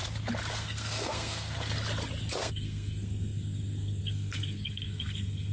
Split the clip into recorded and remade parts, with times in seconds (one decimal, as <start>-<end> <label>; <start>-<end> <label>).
0.0-0.5 recorded; 0.5-1.7 remade; 1.7-2.4 recorded; 2.4-5.5 remade